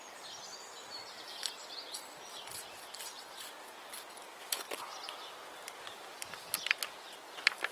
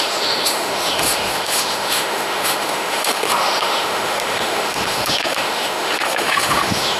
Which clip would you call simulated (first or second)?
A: second